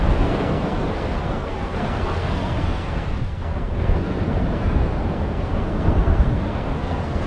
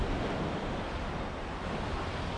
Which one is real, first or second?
second